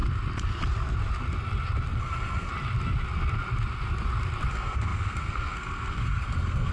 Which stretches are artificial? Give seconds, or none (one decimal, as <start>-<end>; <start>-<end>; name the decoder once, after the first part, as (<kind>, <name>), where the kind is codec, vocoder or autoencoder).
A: 2.0-2.5 (codec, SNAC); 4.5-6.7